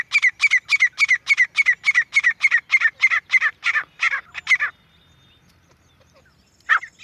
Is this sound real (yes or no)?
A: yes